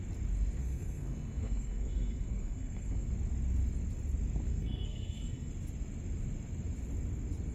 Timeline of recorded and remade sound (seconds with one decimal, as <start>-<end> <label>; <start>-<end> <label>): 0.0-0.6 recorded; 0.6-3.1 remade; 3.1-4.5 recorded; 4.5-5.5 remade; 5.5-7.5 recorded